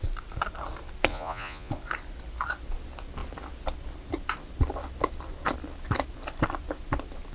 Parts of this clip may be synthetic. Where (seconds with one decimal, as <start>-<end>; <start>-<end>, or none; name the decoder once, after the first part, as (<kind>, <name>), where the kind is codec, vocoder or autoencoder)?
1.1-1.7 (vocoder, Vocos)